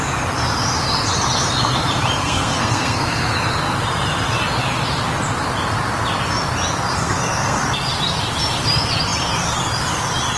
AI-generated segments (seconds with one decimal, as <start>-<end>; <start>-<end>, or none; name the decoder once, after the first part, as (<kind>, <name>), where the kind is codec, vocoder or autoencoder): 2.2-3.4 (codec, SNAC); 6.9-7.6